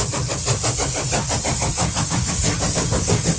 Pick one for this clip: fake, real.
real